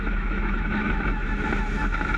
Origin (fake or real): fake